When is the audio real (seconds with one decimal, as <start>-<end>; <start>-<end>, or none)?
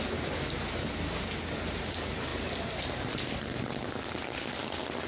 0.0-5.1